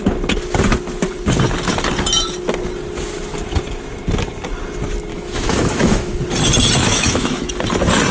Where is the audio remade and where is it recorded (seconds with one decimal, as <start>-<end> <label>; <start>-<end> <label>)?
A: 0.0-5.1 recorded; 5.1-6.2 remade; 6.2-6.8 recorded; 6.8-7.5 remade; 7.5-8.1 recorded